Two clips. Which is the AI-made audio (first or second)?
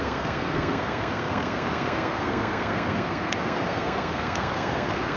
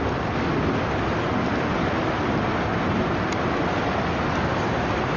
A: first